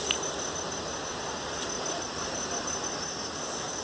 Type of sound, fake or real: real